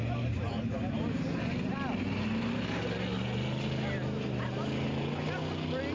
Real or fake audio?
real